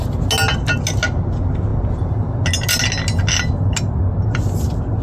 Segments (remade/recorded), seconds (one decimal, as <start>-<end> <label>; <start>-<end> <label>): 0.0-5.0 recorded